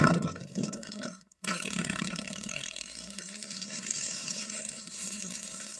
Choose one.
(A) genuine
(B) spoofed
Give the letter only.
B